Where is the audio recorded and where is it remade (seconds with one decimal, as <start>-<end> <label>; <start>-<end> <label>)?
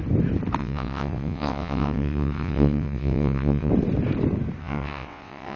0.0-0.6 recorded; 0.6-3.7 remade; 3.7-4.6 recorded; 4.6-5.6 remade